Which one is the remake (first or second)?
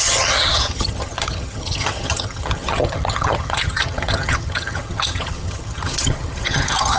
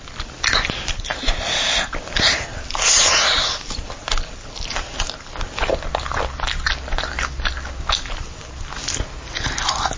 first